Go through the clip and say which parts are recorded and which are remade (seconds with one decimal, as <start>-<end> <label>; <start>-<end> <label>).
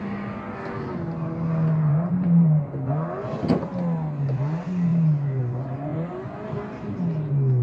0.0-1.9 recorded; 1.9-2.6 remade; 2.6-4.9 recorded; 4.9-5.4 remade; 5.4-7.6 recorded